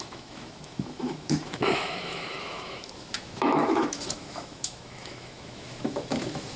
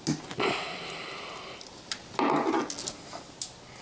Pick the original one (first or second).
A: second